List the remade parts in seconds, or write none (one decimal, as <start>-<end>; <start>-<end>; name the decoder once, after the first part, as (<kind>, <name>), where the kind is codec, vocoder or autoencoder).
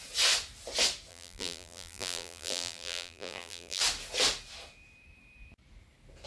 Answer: 1.1-3.8 (vocoder, BigVGAN v2)